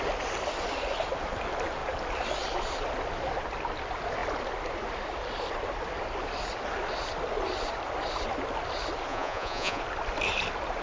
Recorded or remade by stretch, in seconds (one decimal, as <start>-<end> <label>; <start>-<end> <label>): 0.0-9.1 recorded; 9.1-9.8 remade; 9.8-10.8 recorded